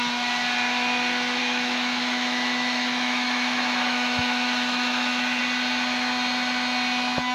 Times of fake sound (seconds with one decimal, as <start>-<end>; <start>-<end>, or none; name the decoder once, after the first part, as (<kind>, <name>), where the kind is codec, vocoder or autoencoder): 1.4-5.4 (autoencoder, DAC-VAE)

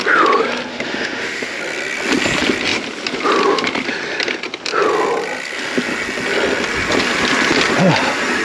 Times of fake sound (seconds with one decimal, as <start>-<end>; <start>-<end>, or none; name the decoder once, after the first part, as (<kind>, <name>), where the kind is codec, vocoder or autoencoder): 0.7-1.6 (autoencoder, DAC-VAE)

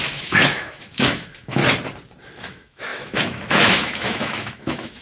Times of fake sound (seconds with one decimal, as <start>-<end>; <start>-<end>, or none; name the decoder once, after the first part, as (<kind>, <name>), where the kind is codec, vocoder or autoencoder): 0.0-1.6 (autoencoder, DAC-VAE); 2.4-5.0